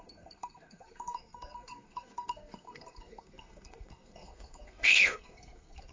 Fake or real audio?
fake